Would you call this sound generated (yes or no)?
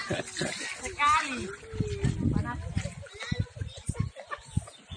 no